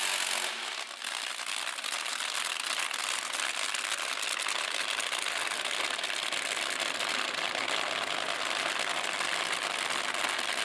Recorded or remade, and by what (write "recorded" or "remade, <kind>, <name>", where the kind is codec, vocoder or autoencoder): recorded